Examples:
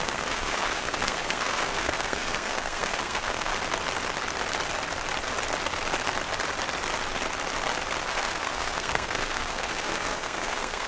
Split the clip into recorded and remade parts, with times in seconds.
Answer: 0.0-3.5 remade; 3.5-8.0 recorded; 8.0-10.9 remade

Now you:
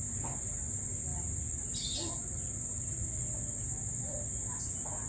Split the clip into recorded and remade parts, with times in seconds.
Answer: 0.0-5.1 recorded

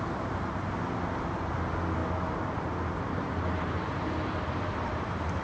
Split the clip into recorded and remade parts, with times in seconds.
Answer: 0.0-5.4 recorded